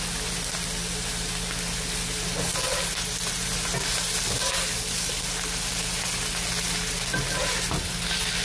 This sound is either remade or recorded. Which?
recorded